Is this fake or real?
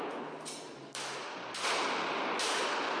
real